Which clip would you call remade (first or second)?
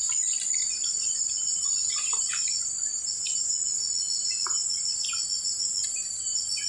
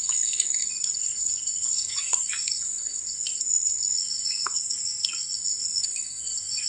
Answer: second